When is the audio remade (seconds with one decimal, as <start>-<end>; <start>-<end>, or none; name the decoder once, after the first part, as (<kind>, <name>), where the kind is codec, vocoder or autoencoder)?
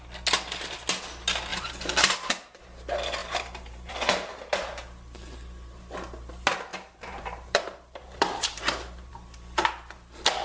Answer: 1.5-2.3 (vocoder, BigVGAN v2); 3.2-3.9; 6.7-9.1